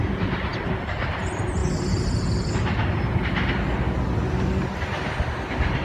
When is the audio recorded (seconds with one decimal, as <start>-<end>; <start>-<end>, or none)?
0.0-5.8